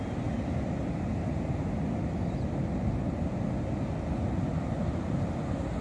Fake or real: real